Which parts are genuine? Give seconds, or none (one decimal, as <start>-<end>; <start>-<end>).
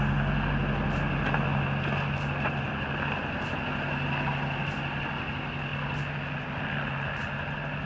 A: 0.0-7.9